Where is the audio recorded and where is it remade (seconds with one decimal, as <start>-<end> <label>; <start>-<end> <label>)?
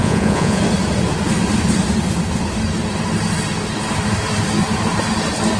0.0-0.6 remade; 0.6-5.6 recorded